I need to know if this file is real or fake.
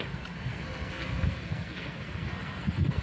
fake